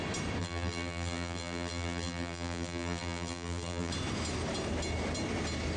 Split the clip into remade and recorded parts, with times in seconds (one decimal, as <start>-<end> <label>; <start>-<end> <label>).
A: 0.0-0.4 recorded; 0.4-3.9 remade; 3.9-5.8 recorded